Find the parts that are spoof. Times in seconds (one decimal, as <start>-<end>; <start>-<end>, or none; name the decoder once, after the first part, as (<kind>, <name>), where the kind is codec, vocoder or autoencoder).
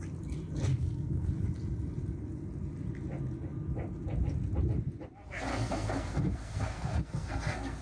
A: 0.7-1.3 (codec, SNAC); 5.5-7.8